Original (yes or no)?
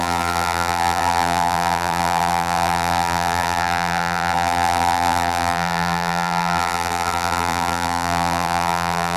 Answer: no